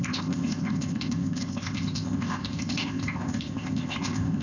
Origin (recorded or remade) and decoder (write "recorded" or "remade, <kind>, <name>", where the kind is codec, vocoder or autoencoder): remade, codec, ZipCodec